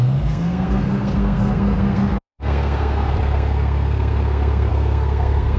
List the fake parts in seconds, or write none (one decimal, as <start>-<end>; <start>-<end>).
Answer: 0.0-5.6